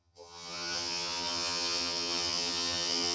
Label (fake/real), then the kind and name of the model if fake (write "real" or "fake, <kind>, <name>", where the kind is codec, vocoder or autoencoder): fake, vocoder, HiFi-GAN